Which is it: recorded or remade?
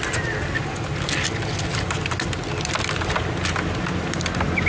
recorded